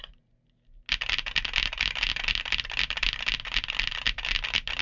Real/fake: real